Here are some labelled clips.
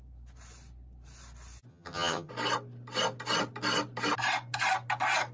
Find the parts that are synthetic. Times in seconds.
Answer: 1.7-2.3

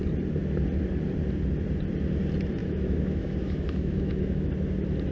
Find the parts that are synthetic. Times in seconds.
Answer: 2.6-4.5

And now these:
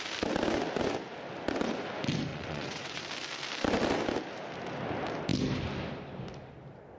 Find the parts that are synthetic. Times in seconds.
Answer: 2.3-3.0